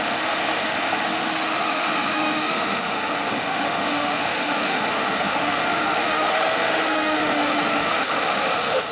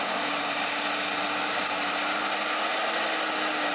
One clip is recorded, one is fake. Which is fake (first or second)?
first